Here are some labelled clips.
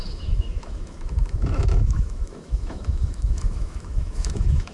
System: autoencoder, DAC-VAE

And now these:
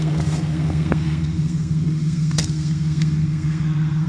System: codec, SNAC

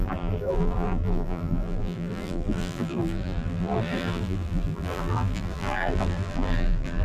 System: vocoder, BigVGAN v2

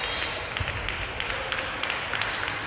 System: none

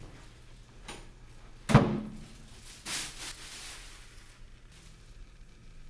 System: none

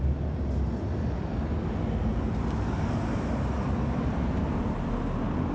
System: none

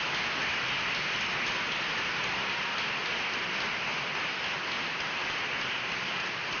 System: none